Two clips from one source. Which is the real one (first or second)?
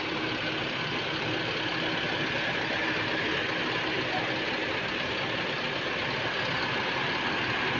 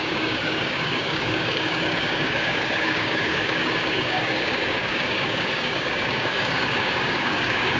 first